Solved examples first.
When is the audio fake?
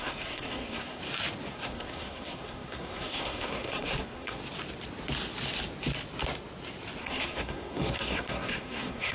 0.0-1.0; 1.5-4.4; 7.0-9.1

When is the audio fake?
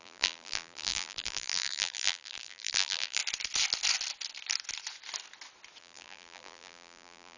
0.0-3.2; 5.8-7.4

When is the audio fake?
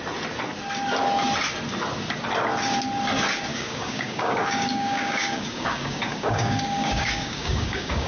3.5-8.1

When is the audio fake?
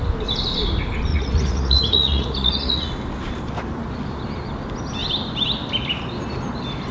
1.1-2.9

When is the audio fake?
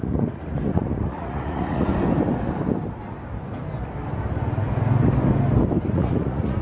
0.0-1.9; 5.9-6.6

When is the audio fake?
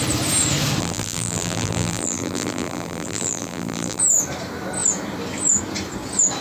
0.8-4.0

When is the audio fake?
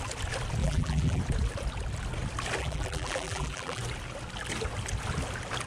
0.6-1.2; 2.6-3.8